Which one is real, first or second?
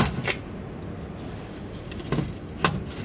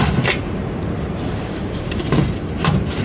first